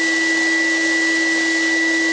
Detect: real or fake real